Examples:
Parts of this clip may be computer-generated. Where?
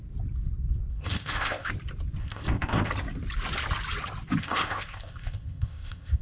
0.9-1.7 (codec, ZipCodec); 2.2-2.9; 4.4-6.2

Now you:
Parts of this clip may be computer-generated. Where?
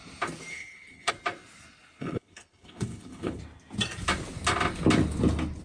0.5-1.1 (codec, HILCodec); 2.0-3.4